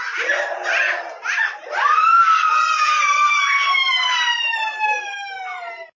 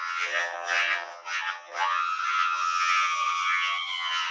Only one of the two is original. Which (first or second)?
first